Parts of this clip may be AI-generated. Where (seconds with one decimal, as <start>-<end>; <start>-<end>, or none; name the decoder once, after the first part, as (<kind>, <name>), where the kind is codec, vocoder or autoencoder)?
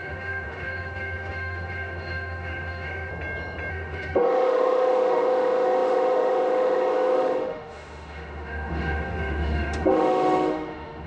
0.0-3.1 (autoencoder, DAC-VAE); 3.7-11.1